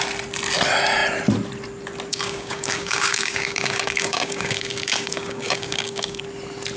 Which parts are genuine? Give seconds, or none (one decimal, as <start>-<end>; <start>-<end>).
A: 0.0-2.1; 6.2-6.8